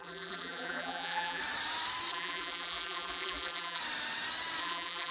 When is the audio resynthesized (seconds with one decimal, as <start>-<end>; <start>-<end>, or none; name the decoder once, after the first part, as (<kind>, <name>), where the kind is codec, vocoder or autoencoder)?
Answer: 0.0-1.4 (vocoder, BigVGAN v2); 2.1-3.8; 4.6-5.1